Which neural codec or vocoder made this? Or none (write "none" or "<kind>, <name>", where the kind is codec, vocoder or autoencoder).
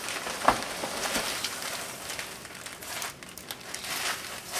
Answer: none